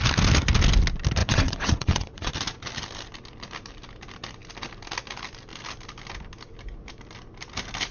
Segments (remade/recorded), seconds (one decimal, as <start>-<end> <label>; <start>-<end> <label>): 0.0-1.2 recorded; 1.2-2.3 remade; 2.3-7.9 recorded